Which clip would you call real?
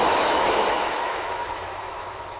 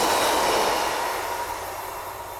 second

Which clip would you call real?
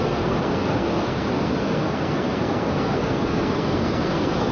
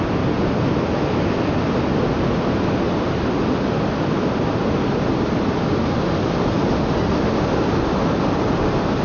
second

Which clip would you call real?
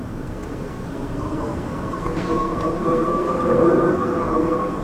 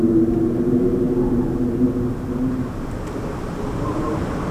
second